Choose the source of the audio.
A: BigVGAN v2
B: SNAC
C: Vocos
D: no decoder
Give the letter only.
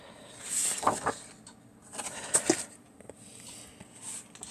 D